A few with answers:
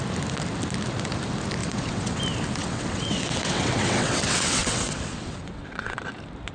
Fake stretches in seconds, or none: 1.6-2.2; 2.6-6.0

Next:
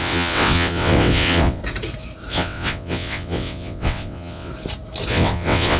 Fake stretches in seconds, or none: 0.0-1.6; 2.3-4.5; 5.1-5.8

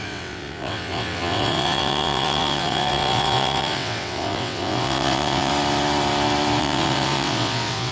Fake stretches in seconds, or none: 0.0-5.5; 6.6-7.9

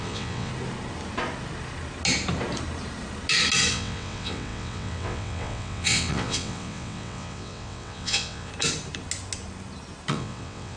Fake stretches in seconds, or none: 0.0-0.5; 3.7-8.5; 10.1-10.8